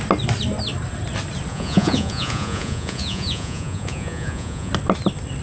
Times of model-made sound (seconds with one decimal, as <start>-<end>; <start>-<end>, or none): 1.5-4.7